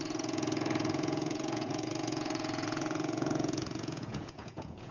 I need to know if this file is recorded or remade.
remade